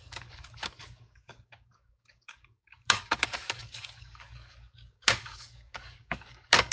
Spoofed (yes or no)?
yes